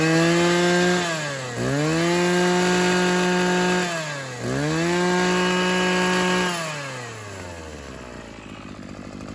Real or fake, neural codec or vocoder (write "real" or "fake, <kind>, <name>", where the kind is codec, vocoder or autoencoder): real